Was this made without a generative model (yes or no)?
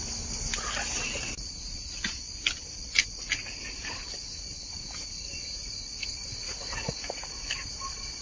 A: yes